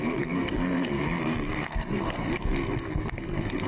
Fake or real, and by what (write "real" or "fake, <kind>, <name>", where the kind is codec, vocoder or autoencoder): fake, codec, SNAC